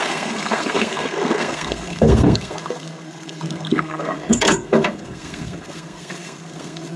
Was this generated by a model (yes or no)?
yes